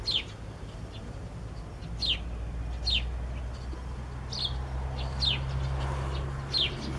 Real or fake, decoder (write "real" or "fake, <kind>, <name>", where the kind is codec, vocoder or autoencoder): real